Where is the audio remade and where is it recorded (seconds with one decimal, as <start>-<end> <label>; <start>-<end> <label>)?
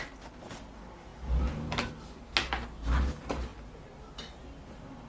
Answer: 0.0-5.1 recorded